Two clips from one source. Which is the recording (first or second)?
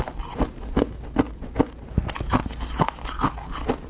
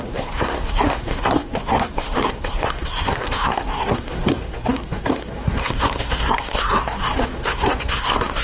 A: first